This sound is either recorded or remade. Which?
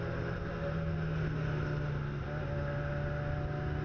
recorded